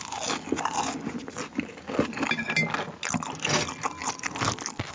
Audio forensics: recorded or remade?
recorded